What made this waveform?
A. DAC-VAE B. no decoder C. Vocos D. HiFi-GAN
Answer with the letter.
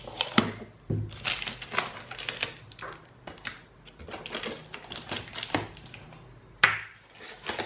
B